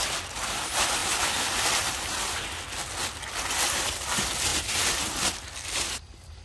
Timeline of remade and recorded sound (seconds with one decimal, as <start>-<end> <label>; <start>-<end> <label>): 0.0-6.4 recorded